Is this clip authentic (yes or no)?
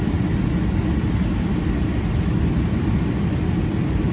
yes